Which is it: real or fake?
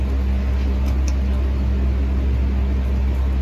real